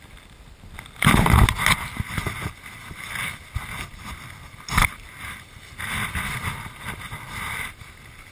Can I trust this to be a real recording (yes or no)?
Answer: yes